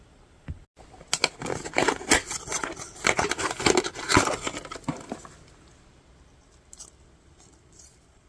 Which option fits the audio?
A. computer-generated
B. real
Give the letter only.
B